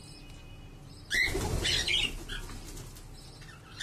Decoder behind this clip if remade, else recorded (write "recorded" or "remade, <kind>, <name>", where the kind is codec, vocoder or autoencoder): recorded